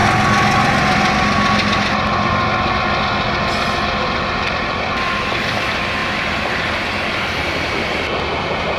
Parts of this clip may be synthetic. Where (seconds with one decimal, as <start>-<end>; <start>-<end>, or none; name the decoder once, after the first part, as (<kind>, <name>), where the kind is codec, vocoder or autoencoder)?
none